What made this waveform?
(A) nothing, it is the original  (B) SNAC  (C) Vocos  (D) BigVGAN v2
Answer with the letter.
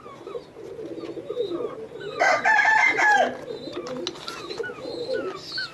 A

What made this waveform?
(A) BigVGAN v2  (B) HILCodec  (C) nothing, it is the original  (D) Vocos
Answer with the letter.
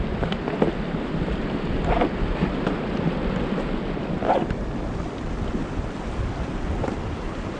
C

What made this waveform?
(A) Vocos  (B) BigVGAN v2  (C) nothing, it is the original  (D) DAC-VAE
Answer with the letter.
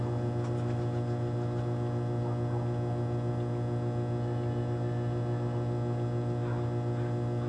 C